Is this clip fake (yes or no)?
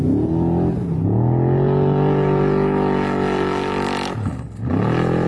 no